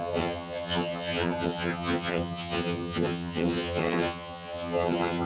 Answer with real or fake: fake